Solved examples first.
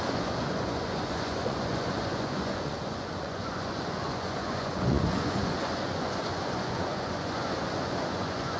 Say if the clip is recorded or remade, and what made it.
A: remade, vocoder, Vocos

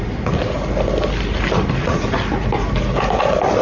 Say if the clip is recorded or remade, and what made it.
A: recorded